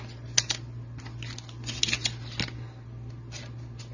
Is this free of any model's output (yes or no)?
yes